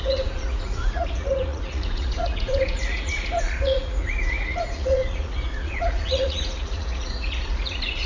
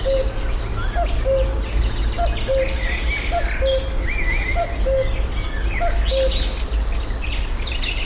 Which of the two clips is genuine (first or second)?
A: second